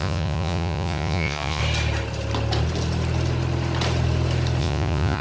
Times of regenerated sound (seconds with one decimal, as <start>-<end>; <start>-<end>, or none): 0.0-1.6; 4.6-5.2